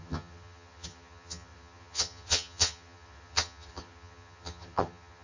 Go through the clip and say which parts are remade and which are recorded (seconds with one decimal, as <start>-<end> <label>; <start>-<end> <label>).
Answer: 0.0-5.2 remade